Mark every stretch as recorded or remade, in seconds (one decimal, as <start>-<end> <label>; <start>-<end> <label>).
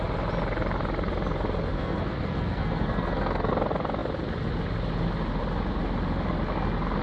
0.0-1.7 recorded; 1.7-3.5 remade; 3.5-7.0 recorded